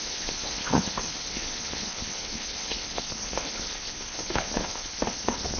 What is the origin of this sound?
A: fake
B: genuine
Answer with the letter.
A